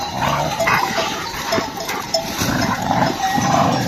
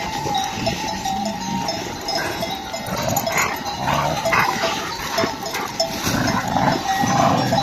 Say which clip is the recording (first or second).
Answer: second